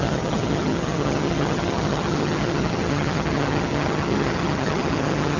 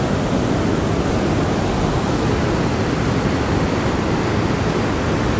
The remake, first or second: first